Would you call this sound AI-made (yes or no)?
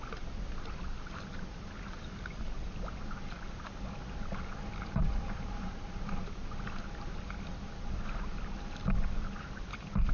no